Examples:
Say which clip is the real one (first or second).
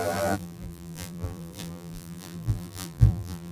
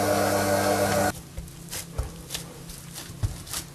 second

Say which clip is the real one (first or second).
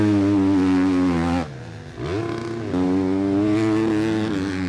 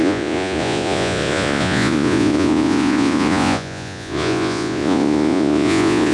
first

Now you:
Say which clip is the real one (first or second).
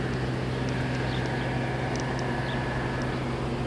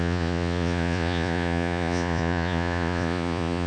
first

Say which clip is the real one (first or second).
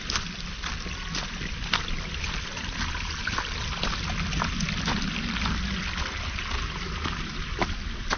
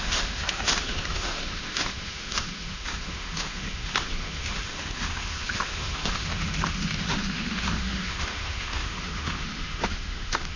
first